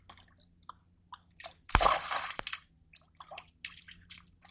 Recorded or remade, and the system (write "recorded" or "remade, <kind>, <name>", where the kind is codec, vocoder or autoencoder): recorded